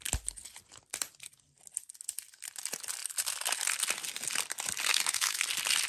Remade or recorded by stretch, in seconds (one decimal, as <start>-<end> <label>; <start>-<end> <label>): 0.0-4.9 recorded; 4.9-5.4 remade; 5.4-5.9 recorded